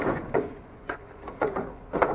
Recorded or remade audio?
remade